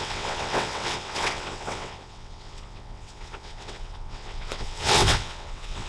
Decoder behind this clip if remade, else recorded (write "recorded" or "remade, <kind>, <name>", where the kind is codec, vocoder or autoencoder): remade, vocoder, WaveNeXt